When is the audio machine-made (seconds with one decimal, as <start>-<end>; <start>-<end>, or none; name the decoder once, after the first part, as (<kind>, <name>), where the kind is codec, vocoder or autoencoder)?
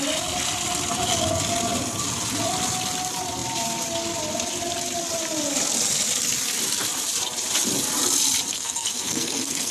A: 8.5-9.7 (codec, SNAC)